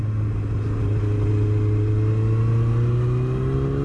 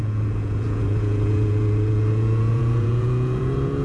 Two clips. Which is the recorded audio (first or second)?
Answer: first